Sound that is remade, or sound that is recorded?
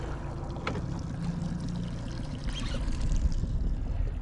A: recorded